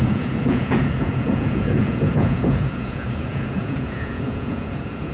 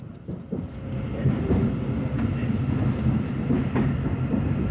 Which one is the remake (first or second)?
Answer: first